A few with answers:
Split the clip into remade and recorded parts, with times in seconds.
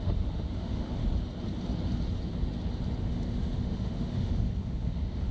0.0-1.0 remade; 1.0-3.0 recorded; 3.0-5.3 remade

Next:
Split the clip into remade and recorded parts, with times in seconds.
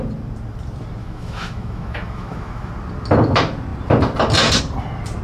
0.0-1.0 recorded; 1.0-2.7 remade; 2.7-5.2 recorded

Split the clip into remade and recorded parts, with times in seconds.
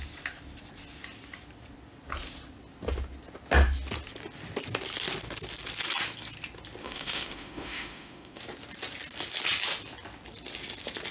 0.0-6.8 recorded; 6.8-8.4 remade; 8.4-11.1 recorded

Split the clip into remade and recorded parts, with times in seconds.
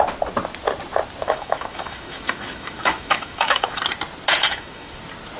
0.0-1.2 recorded; 1.2-3.8 remade; 3.8-4.4 recorded; 4.4-5.0 remade; 5.0-5.4 recorded